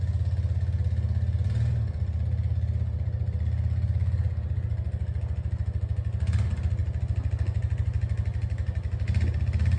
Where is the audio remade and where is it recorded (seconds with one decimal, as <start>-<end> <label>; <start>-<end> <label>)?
0.0-9.8 recorded